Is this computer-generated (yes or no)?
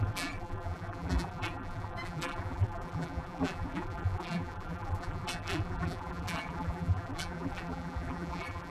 yes